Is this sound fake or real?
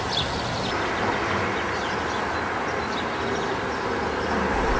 real